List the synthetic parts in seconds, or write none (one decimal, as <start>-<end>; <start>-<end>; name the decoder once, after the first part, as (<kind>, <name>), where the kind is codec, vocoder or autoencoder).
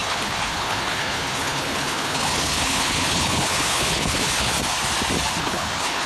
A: 0.0-4.5 (codec, HILCodec); 5.4-6.1